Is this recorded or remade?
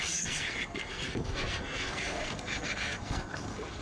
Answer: remade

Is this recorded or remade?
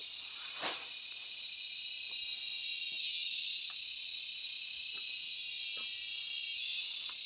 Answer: recorded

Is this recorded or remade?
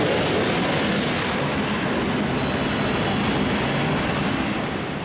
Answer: recorded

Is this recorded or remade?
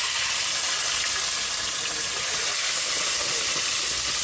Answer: recorded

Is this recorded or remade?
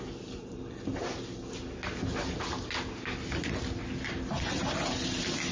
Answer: recorded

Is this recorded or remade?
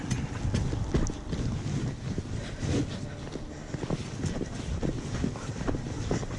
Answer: recorded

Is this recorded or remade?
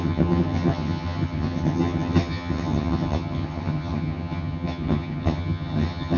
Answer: remade